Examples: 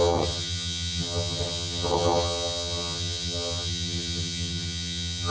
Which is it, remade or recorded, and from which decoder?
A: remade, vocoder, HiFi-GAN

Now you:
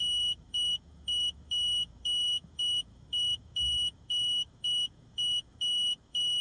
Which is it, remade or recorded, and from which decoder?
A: remade, autoencoder, DAC-VAE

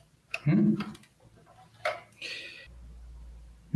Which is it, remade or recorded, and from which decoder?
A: recorded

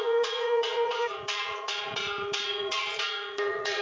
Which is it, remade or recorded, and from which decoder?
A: remade, vocoder, Vocos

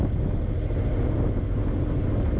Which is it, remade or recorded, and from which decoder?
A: recorded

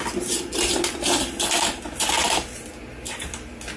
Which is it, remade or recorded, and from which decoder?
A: recorded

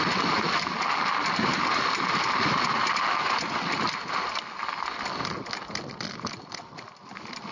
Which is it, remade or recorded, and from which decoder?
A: recorded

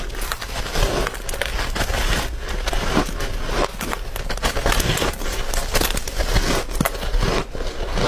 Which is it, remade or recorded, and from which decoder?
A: recorded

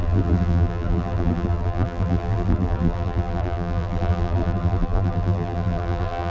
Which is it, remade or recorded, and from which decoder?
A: remade, vocoder, BigVGAN v2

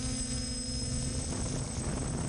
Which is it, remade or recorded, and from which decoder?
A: recorded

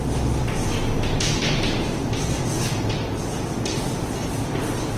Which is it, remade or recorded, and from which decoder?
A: recorded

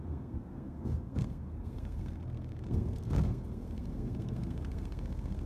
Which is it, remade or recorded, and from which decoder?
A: remade, codec, SNAC